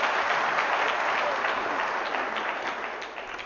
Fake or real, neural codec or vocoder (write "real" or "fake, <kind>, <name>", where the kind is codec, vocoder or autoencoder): real